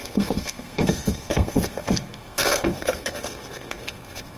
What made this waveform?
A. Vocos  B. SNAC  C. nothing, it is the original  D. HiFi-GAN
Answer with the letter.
B